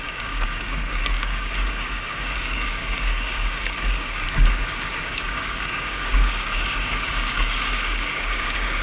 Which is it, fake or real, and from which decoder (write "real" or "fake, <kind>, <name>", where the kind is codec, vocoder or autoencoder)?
fake, codec, DAC